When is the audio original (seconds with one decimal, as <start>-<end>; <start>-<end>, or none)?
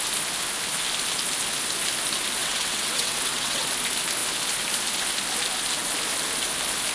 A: 0.0-2.4; 3.7-6.9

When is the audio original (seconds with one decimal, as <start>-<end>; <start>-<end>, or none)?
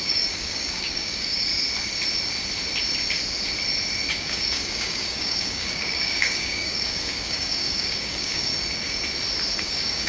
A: 1.5-4.1; 8.5-9.6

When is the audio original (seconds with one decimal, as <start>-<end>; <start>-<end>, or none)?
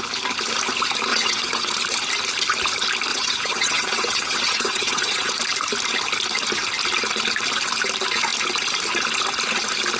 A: 0.0-1.1; 1.7-3.1; 5.3-10.0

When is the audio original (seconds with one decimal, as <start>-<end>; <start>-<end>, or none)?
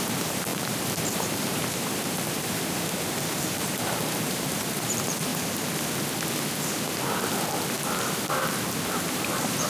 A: 5.3-9.0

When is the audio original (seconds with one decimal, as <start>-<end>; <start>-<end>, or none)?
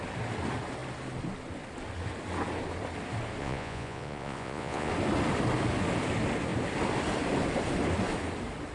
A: 0.0-3.4; 4.9-8.7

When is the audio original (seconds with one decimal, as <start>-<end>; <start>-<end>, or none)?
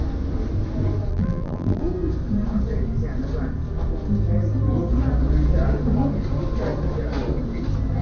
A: 0.0-1.1; 1.8-8.0